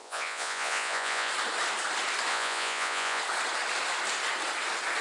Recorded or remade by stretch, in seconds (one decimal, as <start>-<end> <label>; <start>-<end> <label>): 0.0-1.3 remade; 1.3-2.3 recorded; 2.3-3.2 remade; 3.2-5.0 recorded